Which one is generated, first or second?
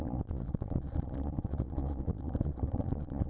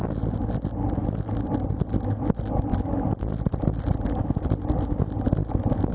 first